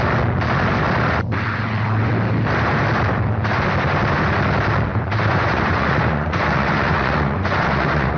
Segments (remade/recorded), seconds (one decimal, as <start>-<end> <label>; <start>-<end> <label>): 0.0-1.5 recorded; 1.5-2.1 remade; 2.1-4.9 recorded; 4.9-8.2 remade